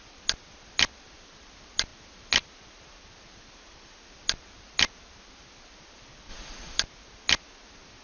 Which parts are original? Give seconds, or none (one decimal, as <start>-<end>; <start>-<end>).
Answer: 0.0-6.3; 6.8-8.0